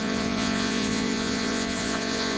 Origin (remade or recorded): remade